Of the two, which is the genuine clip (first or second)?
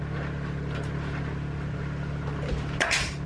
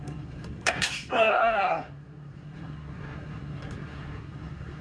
first